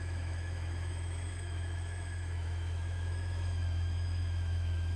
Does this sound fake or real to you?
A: fake